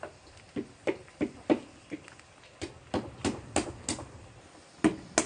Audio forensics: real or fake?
real